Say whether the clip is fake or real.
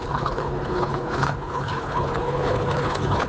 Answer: fake